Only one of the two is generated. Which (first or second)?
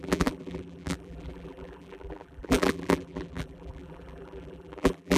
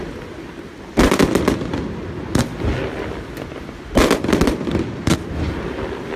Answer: first